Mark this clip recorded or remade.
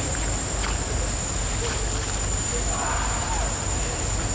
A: recorded